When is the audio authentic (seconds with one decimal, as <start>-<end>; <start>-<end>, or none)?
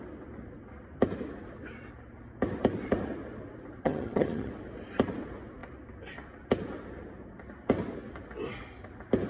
0.0-3.8; 4.5-9.3